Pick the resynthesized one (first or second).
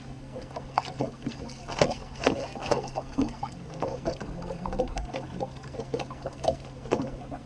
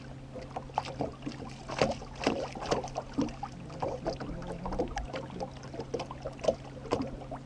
first